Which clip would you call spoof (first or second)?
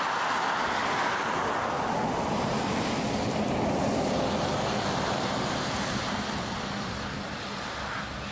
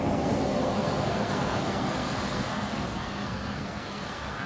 second